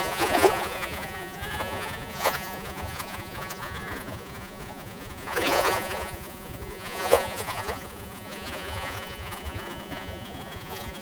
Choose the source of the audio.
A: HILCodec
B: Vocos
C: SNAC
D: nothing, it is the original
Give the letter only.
B